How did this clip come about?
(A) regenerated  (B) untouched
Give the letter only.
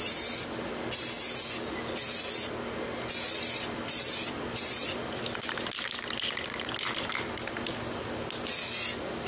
B